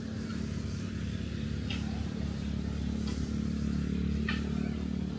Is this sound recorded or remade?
recorded